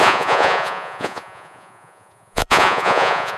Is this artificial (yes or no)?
yes